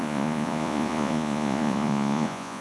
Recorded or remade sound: remade